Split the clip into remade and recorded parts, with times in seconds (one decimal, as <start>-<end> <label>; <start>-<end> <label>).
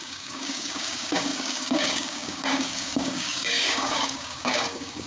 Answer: 0.0-5.1 remade